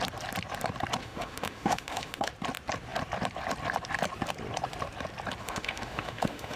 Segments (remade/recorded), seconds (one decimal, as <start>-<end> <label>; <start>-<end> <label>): 0.0-1.0 recorded; 1.0-2.3 remade; 2.3-5.4 recorded; 5.4-6.6 remade